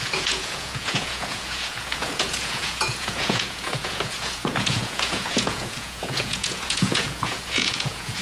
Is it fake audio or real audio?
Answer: fake